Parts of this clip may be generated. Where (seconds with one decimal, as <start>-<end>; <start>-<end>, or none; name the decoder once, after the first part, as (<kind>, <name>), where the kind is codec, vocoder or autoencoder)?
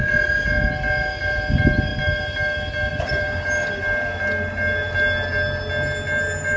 none